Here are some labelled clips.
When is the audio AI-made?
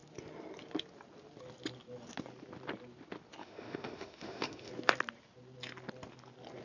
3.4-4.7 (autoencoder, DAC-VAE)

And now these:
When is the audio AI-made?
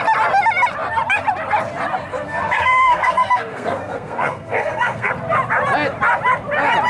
2.1-5.1 (codec, SNAC)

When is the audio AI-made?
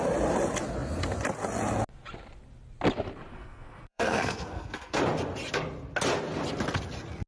3.3-5.0 (codec, SNAC)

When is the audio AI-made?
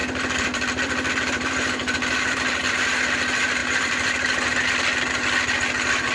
0.0-3.1 (vocoder, BigVGAN v2); 3.6-4.7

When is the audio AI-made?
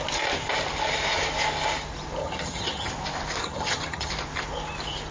2.2-2.9 (vocoder, HiFi-GAN); 3.4-4.1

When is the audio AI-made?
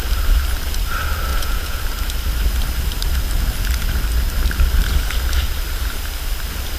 1.3-1.8 (vocoder, Vocos)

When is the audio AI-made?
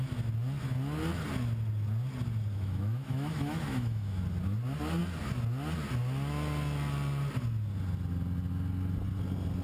2.5-4.2 (autoencoder, DAC-VAE)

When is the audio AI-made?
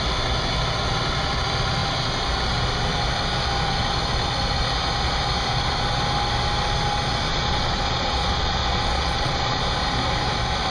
7.3-9.6 (vocoder, Vocos)